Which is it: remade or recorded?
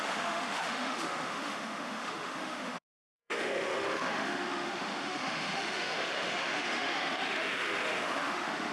remade